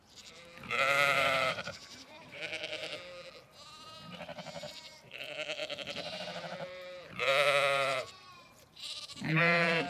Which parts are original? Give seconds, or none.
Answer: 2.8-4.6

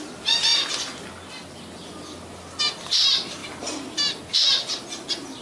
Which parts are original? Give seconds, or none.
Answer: 0.0-5.4

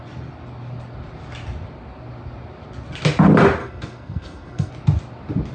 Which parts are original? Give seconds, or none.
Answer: 0.0-3.6; 4.7-5.5

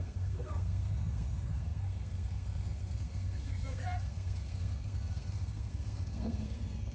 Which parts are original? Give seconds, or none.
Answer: none